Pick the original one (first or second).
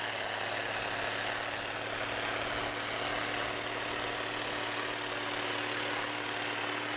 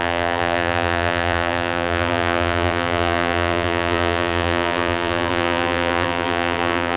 first